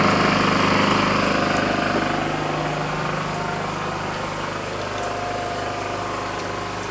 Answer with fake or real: real